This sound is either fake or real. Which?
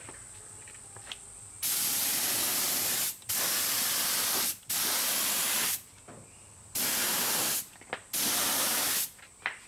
real